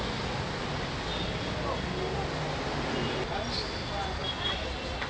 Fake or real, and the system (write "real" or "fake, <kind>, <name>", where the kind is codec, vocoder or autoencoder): real